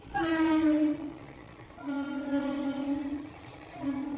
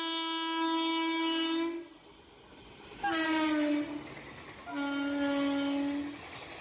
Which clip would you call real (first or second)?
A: second